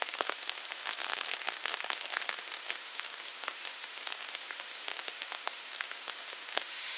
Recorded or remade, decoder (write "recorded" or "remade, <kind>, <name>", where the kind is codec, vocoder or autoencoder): remade, autoencoder, DAC-VAE